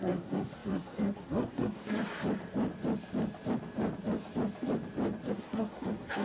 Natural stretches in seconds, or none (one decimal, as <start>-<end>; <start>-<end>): 2.0-5.3